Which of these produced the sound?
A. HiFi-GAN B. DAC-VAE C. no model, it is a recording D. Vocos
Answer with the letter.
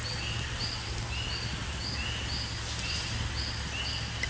C